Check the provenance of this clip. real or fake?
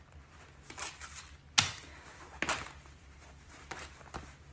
real